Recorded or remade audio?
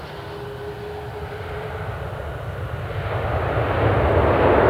recorded